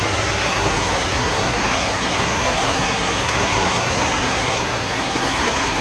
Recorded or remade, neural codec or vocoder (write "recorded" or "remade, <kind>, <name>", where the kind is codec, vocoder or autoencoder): remade, codec, SNAC